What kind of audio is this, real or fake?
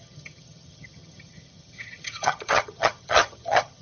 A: fake